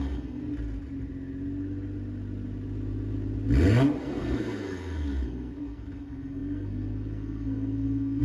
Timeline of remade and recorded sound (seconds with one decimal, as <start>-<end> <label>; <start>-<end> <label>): 0.0-0.4 remade; 0.4-4.0 recorded; 4.0-8.2 remade